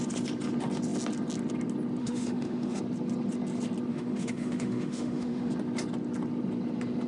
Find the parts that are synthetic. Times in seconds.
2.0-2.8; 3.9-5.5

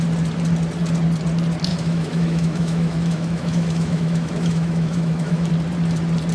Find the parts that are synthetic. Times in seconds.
1.7-5.5

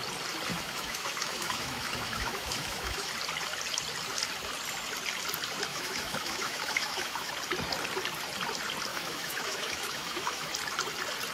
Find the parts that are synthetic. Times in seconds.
0.5-3.1; 5.7-7.3; 8.9-10.5

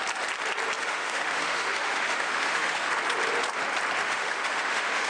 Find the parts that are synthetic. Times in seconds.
0.8-2.9; 4.0-5.1

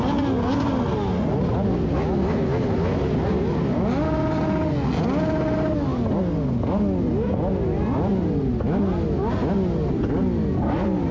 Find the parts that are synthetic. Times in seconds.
none

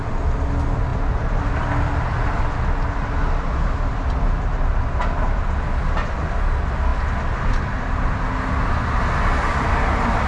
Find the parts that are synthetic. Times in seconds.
none

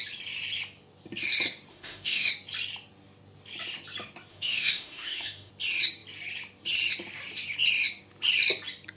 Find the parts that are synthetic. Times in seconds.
1.7-2.3; 4.3-5.5